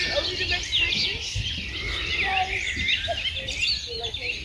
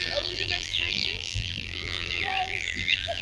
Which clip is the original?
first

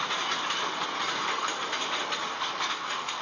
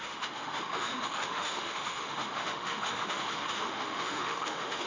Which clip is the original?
first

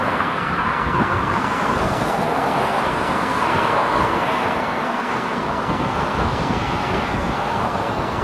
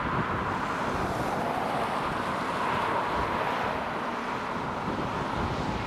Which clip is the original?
second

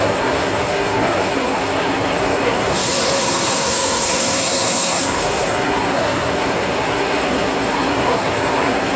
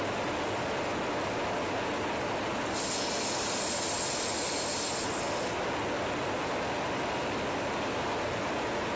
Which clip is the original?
second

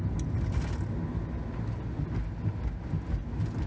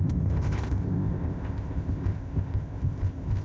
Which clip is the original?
first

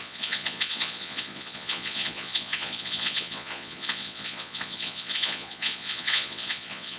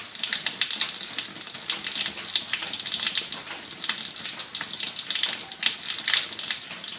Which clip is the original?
second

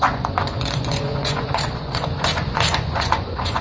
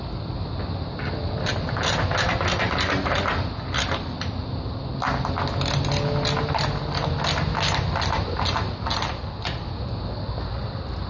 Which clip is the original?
second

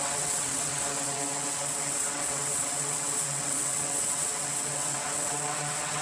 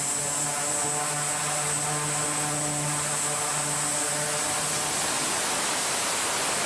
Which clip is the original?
second